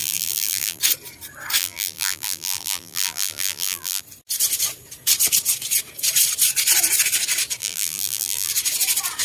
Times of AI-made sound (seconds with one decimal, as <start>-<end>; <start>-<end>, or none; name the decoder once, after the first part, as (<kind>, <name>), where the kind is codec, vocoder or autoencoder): 0.0-0.8 (vocoder, BigVGAN v2); 1.6-4.0; 7.6-8.5